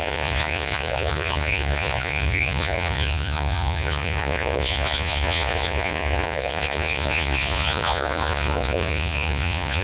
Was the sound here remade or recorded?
remade